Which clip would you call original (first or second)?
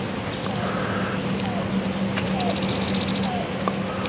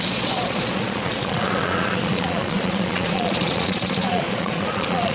first